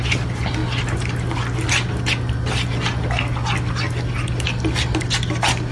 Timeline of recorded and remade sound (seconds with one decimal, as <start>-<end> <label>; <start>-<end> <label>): 0.0-5.7 recorded